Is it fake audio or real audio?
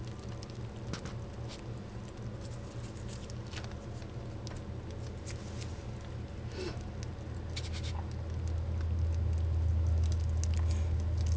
real